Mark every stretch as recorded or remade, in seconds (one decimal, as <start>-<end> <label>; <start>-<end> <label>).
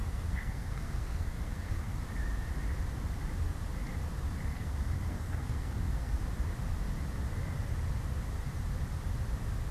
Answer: 0.0-2.0 remade; 2.0-4.5 recorded; 4.5-6.2 remade; 6.2-9.7 recorded